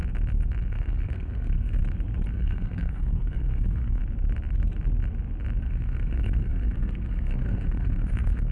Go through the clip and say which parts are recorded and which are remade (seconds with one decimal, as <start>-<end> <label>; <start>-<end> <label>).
0.0-0.7 recorded; 0.7-1.8 remade; 1.8-2.3 recorded; 2.3-4.0 remade; 4.0-5.6 recorded; 5.6-8.5 remade